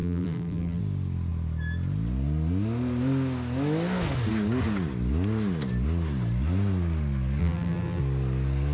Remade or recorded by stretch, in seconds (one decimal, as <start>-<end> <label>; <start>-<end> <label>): 0.0-0.8 remade; 0.8-7.4 recorded; 7.4-8.0 remade; 8.0-8.7 recorded